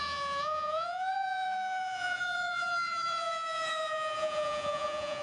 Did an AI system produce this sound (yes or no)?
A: yes